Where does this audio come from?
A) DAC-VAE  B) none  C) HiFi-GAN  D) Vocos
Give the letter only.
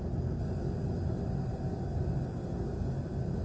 B